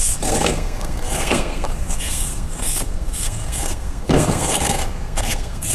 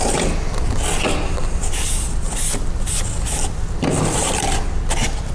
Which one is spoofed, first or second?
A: first